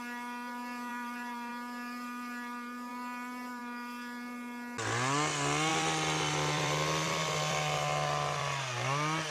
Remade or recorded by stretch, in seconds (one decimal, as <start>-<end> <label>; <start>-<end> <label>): 0.0-0.9 recorded; 0.9-1.5 remade; 1.5-5.7 recorded; 5.7-8.4 remade; 8.4-9.3 recorded

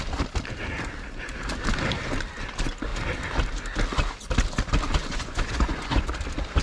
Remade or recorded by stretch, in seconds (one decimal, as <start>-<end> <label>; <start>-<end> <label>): 0.0-5.0 recorded; 5.0-6.0 remade; 6.0-6.6 recorded

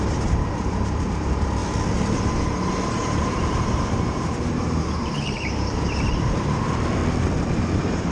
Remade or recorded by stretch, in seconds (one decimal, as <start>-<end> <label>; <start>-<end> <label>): 0.0-1.6 remade; 1.6-3.3 recorded; 3.3-7.0 remade; 7.0-7.6 recorded; 7.6-8.1 remade

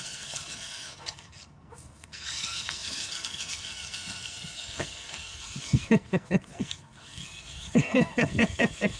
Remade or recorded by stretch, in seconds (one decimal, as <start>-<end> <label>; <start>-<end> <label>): 0.0-9.0 remade

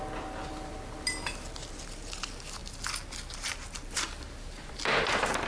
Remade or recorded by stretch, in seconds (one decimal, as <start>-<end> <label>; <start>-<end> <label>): 0.0-5.5 recorded

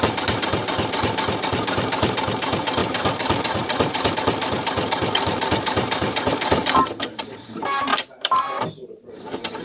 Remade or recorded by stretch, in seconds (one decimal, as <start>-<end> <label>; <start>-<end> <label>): 0.0-0.6 remade; 0.6-1.5 recorded; 1.5-9.6 remade

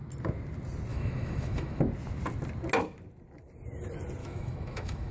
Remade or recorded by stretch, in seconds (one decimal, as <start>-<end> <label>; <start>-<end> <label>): 0.0-0.9 recorded; 0.9-1.8 remade; 1.8-4.2 recorded; 4.2-5.1 remade